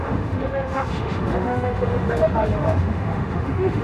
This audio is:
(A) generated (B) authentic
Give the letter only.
A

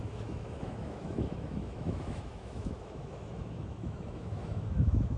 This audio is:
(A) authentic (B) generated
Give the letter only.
B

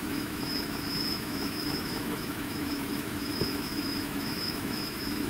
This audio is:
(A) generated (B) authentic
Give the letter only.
A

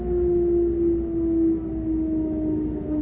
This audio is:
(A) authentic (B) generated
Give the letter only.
A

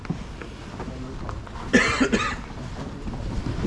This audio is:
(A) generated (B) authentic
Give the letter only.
B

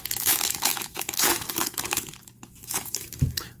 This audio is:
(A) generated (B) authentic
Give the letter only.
A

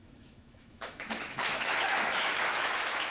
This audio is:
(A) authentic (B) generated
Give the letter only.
B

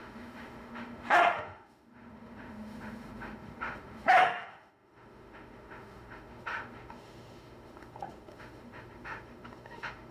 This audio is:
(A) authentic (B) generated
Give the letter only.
B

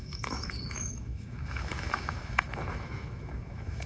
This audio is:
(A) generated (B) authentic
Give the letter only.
A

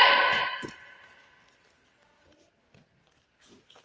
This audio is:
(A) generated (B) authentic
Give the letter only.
B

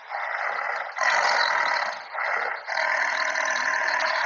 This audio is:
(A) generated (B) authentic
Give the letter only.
B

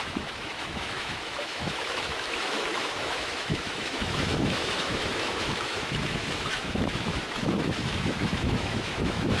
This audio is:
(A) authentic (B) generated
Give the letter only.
B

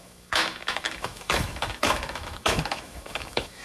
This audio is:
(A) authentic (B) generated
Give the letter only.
B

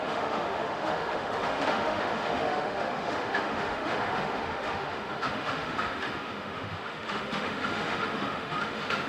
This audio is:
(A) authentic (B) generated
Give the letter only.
B